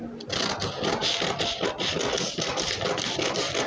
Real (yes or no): yes